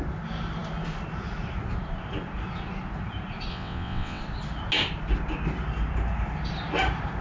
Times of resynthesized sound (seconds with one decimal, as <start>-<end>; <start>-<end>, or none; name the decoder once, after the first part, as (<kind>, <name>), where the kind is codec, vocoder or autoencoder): 3.5-4.2 (vocoder, WaveNeXt)